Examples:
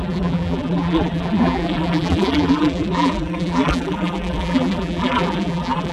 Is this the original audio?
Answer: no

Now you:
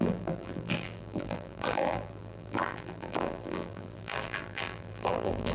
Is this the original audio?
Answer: no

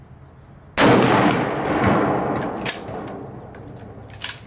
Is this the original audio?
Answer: yes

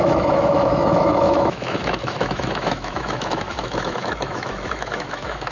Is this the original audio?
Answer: no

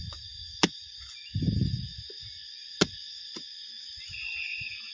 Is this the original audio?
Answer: yes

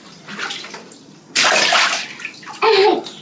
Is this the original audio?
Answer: yes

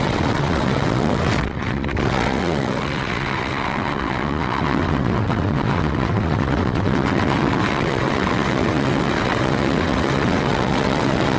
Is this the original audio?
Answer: no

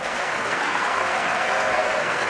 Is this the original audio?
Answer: no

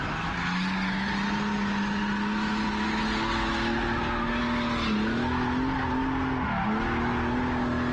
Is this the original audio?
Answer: yes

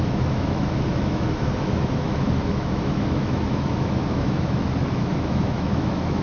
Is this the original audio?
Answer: no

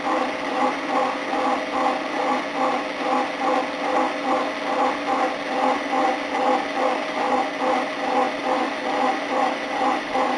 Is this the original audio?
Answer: yes